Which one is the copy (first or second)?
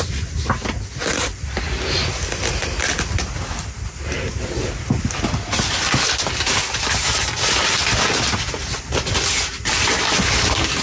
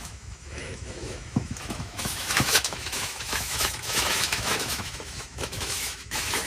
second